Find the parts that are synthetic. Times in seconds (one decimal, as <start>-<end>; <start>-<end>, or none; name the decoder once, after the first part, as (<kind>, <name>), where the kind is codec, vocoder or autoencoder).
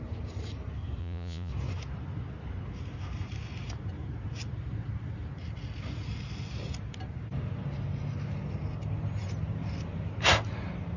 1.0-1.5 (vocoder, Vocos)